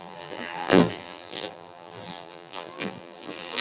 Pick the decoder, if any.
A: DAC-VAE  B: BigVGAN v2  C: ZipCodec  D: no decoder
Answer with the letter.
B